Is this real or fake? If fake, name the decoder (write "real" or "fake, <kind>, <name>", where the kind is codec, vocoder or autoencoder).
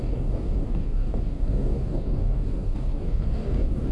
fake, codec, DAC